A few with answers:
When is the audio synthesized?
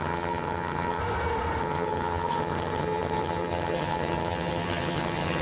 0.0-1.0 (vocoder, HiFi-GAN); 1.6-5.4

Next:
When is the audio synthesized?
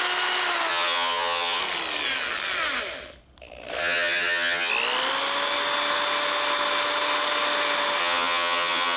0.7-1.6 (vocoder, HiFi-GAN); 3.8-4.7; 8.0-9.0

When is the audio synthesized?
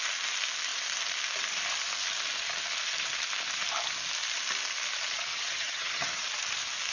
5.3-6.2 (vocoder, HiFi-GAN)